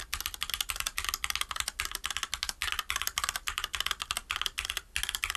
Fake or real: real